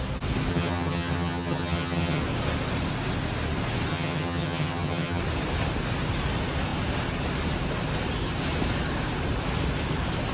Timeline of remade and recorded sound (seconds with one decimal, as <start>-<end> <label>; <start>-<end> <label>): 0.0-0.5 recorded; 0.5-2.2 remade; 2.2-3.9 recorded; 3.9-5.2 remade; 5.2-10.3 recorded